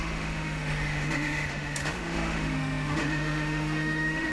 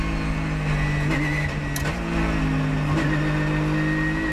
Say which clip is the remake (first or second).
first